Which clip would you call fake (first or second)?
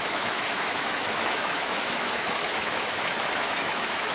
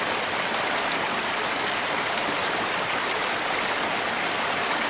first